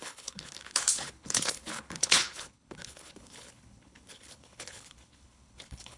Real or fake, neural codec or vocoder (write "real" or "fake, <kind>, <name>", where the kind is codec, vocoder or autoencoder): fake, codec, HILCodec